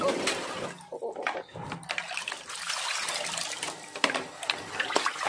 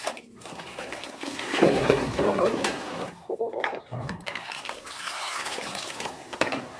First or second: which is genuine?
first